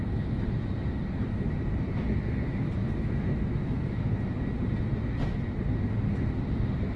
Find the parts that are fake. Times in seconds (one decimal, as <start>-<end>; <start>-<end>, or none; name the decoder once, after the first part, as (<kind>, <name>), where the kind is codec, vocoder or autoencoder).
2.8-4.1 (autoencoder, DAC-VAE)

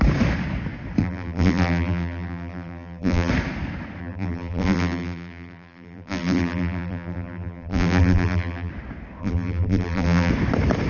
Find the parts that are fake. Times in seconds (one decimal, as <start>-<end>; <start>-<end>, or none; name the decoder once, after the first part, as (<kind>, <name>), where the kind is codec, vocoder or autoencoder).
1.0-3.3 (vocoder, BigVGAN v2); 4.0-8.7; 9.2-10.3

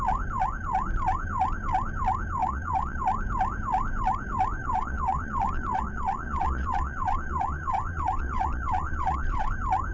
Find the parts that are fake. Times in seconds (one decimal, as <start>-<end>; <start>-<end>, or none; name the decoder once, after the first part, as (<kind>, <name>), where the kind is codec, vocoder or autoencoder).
2.4-3.0 (vocoder, Vocos); 4.6-9.5

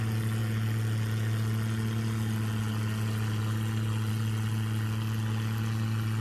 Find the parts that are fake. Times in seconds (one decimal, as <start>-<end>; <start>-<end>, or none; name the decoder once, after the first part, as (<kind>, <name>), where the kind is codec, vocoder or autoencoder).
none

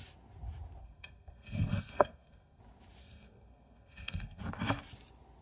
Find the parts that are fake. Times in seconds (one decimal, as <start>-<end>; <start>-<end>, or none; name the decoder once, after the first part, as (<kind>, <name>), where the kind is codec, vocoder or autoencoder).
0.8-2.6 (codec, SNAC); 3.0-4.4

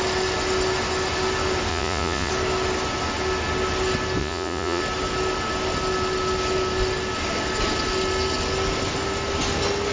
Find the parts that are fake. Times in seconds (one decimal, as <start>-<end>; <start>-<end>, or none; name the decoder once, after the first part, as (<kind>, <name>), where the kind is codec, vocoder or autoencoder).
1.7-2.3 (vocoder, Vocos); 4.2-4.8